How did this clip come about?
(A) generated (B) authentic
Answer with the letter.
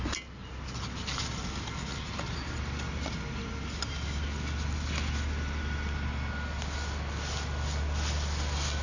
B